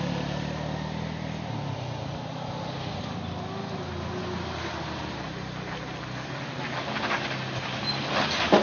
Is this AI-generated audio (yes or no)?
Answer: no